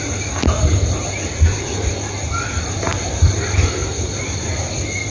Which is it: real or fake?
real